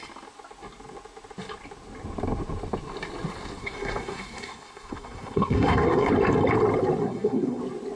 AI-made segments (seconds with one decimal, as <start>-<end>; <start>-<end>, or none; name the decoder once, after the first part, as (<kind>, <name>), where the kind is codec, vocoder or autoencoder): 3.6-6.1 (codec, SNAC); 7.0-7.6